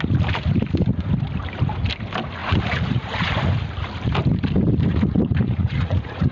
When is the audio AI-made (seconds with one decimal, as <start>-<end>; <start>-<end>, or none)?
2.4-3.3; 4.9-6.3